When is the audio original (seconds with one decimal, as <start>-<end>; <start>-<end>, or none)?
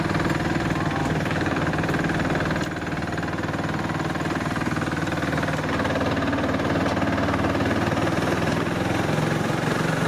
0.0-1.0; 1.7-10.1